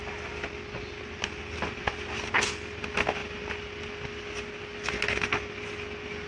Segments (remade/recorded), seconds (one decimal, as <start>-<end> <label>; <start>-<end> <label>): 0.0-6.3 recorded

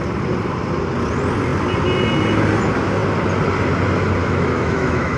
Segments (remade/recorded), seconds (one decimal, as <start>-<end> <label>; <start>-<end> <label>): 0.0-4.2 recorded; 4.2-5.2 remade

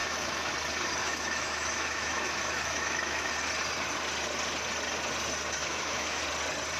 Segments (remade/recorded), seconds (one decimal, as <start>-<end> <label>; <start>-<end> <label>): 0.0-0.5 remade; 0.5-1.0 recorded; 1.0-3.3 remade; 3.3-5.6 recorded; 5.6-6.2 remade; 6.2-6.8 recorded

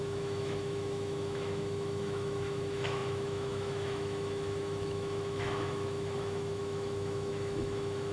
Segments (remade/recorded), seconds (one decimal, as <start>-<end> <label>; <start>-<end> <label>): 0.0-8.1 remade

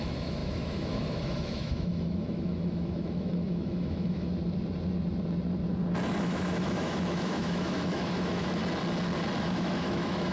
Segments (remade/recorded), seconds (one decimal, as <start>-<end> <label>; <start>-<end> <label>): 0.0-4.3 remade; 4.3-6.2 recorded; 6.2-8.6 remade; 8.6-9.4 recorded; 9.4-10.3 remade